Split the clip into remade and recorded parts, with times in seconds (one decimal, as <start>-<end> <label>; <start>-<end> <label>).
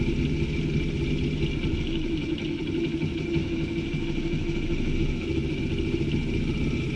0.0-1.7 recorded; 1.7-2.6 remade; 2.6-3.4 recorded; 3.4-5.6 remade; 5.6-7.0 recorded